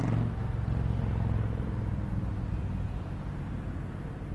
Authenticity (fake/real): real